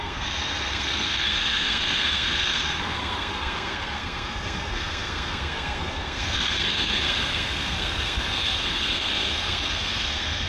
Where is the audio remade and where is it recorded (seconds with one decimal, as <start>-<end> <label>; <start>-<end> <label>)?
0.0-10.5 remade

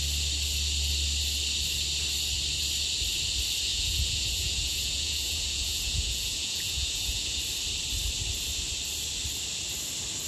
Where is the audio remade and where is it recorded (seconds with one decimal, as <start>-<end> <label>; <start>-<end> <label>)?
0.0-3.7 recorded; 3.7-7.4 remade; 7.4-10.3 recorded